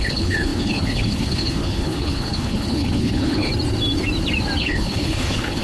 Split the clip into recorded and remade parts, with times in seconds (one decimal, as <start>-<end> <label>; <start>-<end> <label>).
0.0-3.5 remade; 3.5-4.6 recorded; 4.6-5.6 remade